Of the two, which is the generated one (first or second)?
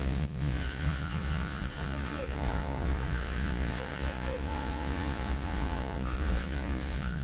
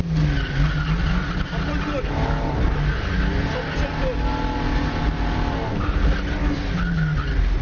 first